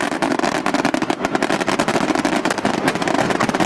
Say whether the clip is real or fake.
real